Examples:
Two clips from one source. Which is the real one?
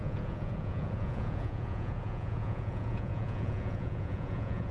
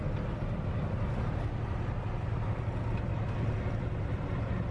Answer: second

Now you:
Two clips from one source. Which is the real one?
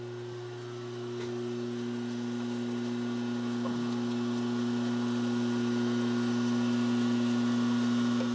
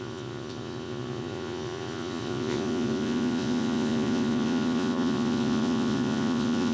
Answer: first